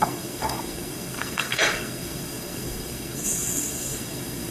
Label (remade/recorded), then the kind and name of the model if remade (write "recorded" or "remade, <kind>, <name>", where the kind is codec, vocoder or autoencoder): remade, codec, SNAC